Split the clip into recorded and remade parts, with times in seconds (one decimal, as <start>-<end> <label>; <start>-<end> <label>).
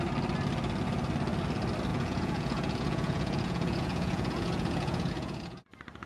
0.0-1.9 recorded; 1.9-5.6 remade; 5.6-6.1 recorded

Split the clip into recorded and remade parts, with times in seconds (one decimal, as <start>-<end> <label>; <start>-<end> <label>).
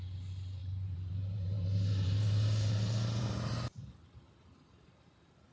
0.0-0.6 recorded; 0.6-3.9 remade; 3.9-5.5 recorded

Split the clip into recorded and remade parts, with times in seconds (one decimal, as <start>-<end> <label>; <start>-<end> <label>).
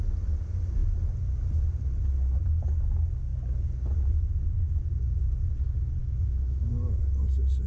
0.0-6.0 recorded; 6.0-6.7 remade; 6.7-7.7 recorded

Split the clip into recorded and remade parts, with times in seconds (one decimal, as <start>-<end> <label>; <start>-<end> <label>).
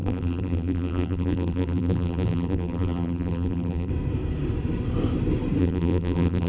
0.0-3.9 remade; 3.9-5.6 recorded; 5.6-6.5 remade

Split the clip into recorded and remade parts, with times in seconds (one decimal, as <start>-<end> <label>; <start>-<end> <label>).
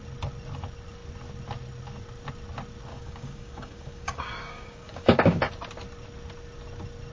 0.0-2.9 recorded; 2.9-5.5 remade; 5.5-7.1 recorded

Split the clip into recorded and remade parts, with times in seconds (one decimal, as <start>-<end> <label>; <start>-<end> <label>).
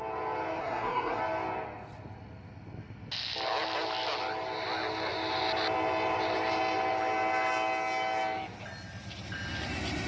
0.0-0.6 recorded; 0.6-1.2 remade; 1.2-10.1 recorded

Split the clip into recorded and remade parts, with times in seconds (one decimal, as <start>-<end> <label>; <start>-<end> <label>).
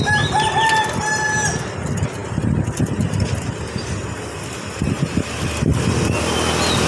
0.0-6.9 recorded